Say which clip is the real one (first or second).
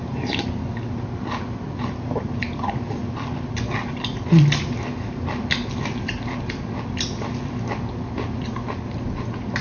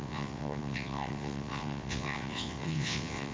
first